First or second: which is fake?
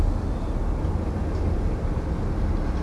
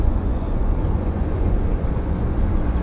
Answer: second